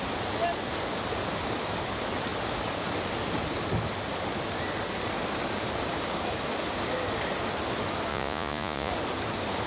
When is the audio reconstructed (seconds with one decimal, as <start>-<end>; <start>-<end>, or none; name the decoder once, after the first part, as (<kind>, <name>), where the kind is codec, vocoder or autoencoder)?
8.1-8.9 (vocoder, Vocos)